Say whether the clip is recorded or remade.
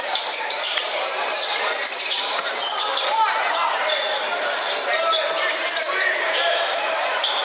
remade